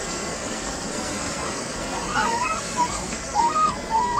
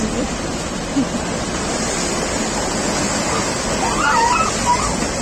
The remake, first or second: first